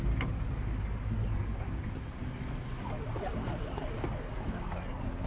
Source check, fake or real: real